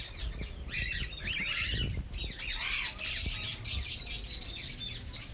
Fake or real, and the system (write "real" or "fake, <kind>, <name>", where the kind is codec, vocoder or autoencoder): real